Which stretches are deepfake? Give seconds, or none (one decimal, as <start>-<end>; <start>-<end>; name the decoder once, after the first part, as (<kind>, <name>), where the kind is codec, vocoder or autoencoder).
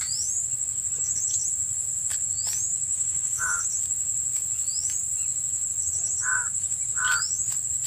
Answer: 2.9-3.6 (autoencoder, DAC-VAE)